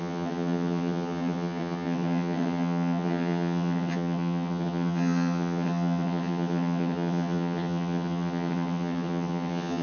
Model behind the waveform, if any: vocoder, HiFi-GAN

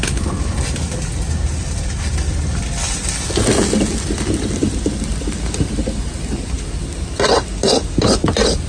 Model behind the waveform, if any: none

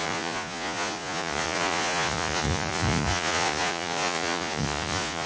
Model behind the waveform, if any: vocoder, Vocos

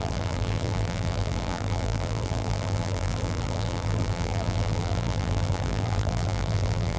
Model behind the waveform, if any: vocoder, BigVGAN v2